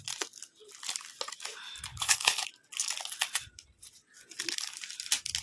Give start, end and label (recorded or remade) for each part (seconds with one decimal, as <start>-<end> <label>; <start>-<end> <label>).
0.0-1.9 recorded; 1.9-2.5 remade; 2.5-5.4 recorded